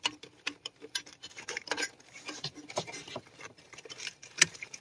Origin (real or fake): fake